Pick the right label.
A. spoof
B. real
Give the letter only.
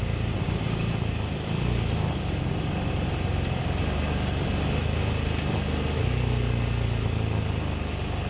B